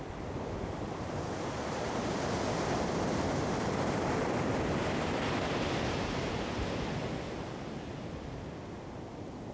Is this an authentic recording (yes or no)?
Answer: yes